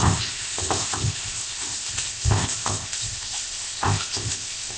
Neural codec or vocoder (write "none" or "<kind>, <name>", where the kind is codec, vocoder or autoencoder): codec, ZipCodec